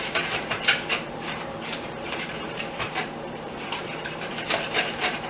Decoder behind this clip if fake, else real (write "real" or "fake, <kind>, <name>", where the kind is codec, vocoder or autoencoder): fake, vocoder, BigVGAN v2